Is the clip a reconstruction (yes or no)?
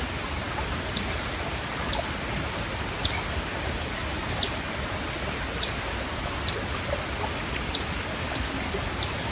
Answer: no